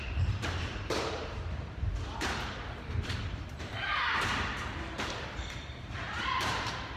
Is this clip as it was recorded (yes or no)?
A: no